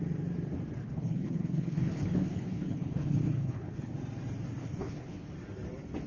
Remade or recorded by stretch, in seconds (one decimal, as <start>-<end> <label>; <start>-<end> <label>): 0.0-0.8 recorded; 0.8-3.9 remade; 3.9-4.6 recorded; 4.6-5.3 remade; 5.3-6.1 recorded